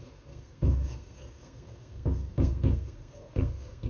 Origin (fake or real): fake